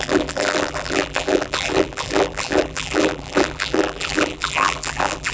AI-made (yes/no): yes